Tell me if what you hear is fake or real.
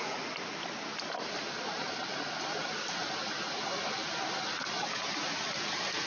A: real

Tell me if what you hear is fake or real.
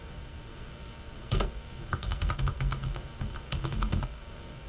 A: fake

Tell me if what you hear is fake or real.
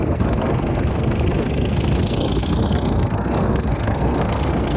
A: fake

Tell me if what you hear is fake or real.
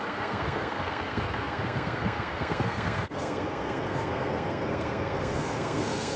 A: fake